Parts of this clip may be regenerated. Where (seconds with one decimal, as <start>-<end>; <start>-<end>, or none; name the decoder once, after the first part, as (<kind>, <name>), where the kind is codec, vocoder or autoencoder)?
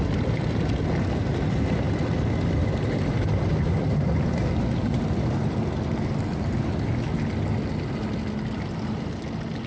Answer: none